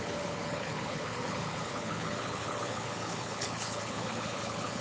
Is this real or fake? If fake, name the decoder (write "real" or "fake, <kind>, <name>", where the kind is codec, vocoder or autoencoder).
fake, codec, HILCodec